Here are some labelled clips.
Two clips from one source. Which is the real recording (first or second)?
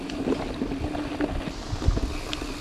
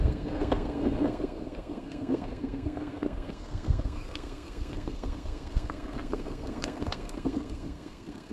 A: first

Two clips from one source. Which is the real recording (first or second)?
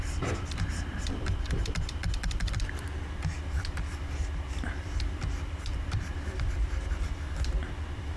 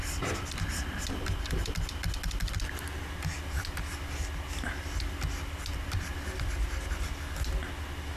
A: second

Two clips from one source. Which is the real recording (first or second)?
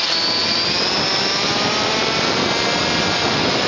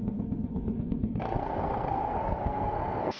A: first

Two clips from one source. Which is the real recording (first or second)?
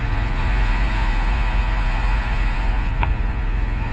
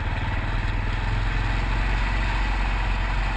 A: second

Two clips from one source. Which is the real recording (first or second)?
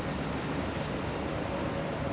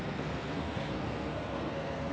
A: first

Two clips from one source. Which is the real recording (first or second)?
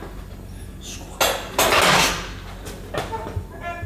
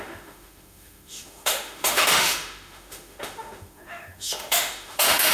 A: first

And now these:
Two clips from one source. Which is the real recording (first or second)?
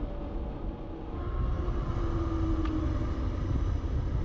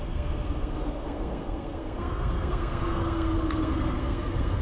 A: first